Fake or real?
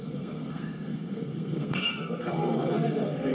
fake